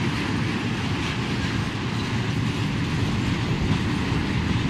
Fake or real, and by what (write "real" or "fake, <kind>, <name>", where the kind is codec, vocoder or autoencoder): real